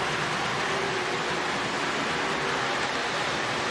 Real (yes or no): yes